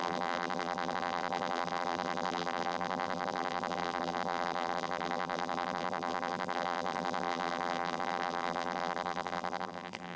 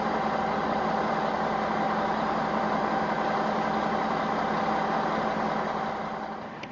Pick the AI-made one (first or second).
first